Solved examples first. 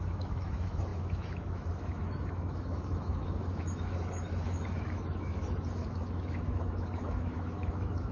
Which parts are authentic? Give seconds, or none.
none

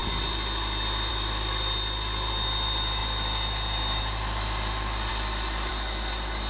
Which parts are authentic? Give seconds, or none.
0.0-6.5

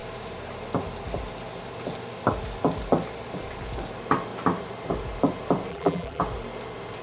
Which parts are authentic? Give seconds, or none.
0.0-5.7; 6.2-7.0

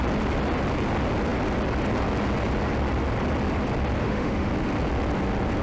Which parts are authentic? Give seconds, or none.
0.0-4.0; 4.5-5.6

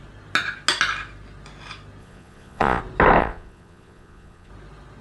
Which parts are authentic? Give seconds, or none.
0.0-2.0; 2.8-3.2; 4.5-5.0

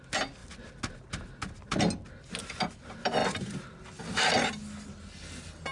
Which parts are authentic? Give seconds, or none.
0.0-5.7